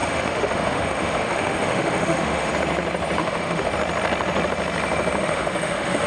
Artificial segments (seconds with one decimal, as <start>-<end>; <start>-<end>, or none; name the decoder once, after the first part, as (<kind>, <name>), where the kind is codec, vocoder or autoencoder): 0.0-2.5 (autoencoder, DAC-VAE); 3.2-3.7; 5.2-6.1